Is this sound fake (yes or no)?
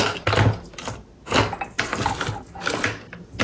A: no